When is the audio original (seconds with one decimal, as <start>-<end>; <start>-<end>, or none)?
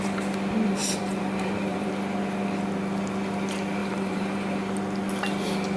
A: 0.0-0.8; 1.9-3.8; 4.6-5.8